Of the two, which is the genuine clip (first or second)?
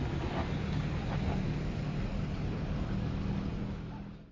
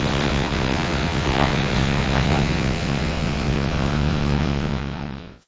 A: first